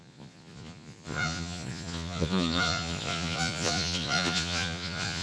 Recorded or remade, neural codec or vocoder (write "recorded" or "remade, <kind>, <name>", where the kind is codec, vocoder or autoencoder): remade, vocoder, Vocos